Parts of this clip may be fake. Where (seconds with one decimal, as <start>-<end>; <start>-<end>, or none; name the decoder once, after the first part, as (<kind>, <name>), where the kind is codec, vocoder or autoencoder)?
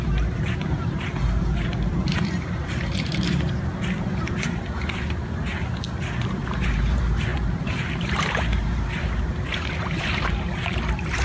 0.0-11.2 (vocoder, BigVGAN v2)